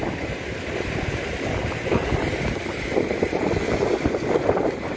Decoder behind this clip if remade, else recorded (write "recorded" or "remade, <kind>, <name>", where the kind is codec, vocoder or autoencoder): recorded